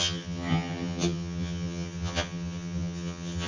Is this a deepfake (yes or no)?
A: yes